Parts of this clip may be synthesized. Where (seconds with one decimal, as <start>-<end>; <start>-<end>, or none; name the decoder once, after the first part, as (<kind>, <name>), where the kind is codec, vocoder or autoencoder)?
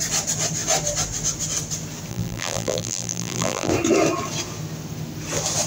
2.1-3.7 (vocoder, BigVGAN v2)